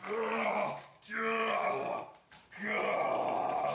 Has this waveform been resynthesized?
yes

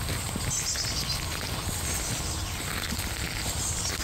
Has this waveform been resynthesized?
no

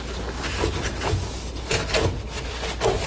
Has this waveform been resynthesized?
no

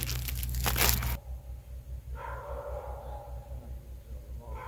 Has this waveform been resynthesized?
no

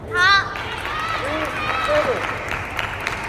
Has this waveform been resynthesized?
no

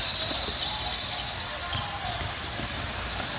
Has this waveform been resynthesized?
yes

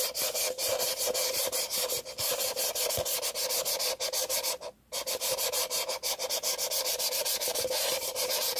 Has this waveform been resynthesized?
yes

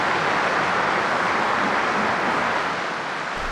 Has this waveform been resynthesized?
no